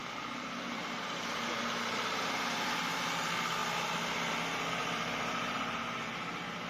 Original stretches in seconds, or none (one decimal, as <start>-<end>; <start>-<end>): 2.8-4.8; 5.6-6.7